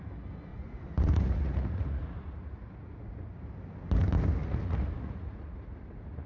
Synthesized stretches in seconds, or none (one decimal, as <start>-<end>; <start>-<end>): 0.5-3.3; 4.4-6.3